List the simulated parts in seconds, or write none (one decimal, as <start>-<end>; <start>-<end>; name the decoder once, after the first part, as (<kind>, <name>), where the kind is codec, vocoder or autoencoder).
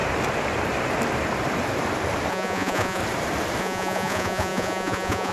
2.3-3.0 (vocoder, Vocos); 3.6-5.3